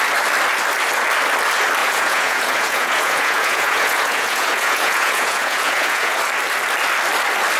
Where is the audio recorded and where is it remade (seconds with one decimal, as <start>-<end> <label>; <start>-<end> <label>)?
0.0-1.8 recorded; 1.8-6.2 remade; 6.2-7.6 recorded

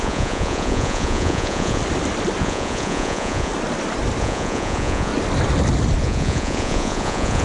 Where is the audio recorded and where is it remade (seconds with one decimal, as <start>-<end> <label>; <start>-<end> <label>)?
0.0-1.8 remade; 1.8-2.4 recorded; 2.4-3.5 remade; 3.5-4.2 recorded; 4.2-5.1 remade; 5.1-6.0 recorded; 6.0-7.4 remade

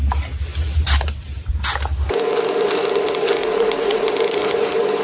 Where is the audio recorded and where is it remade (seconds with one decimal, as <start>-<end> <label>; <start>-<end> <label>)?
0.0-3.4 recorded; 3.4-4.1 remade; 4.1-5.0 recorded

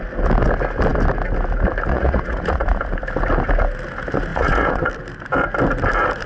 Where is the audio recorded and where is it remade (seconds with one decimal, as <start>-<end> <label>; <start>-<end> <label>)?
0.0-1.9 recorded; 1.9-2.8 remade; 2.8-4.3 recorded; 4.3-4.9 remade; 4.9-6.3 recorded

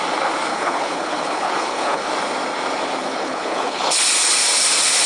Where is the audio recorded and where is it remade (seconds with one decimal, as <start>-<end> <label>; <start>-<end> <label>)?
0.0-0.5 recorded; 0.5-2.1 remade; 2.1-3.0 recorded; 3.0-4.0 remade; 4.0-5.1 recorded

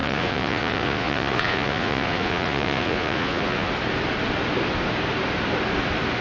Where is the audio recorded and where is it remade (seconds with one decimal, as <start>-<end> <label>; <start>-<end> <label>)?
0.0-3.7 remade; 3.7-6.2 recorded

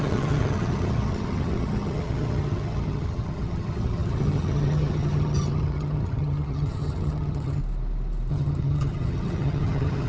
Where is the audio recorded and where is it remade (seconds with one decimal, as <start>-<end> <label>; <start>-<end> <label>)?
0.0-7.6 remade; 7.6-8.3 recorded; 8.3-10.1 remade

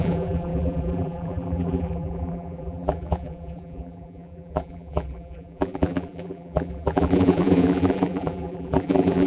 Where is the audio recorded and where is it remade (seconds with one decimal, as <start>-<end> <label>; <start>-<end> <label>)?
0.0-9.3 remade